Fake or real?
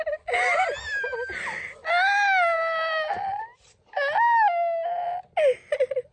real